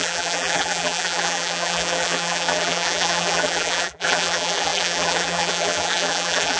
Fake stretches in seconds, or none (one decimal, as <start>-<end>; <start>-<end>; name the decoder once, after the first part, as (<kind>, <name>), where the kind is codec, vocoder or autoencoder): 0.0-6.6 (vocoder, BigVGAN v2)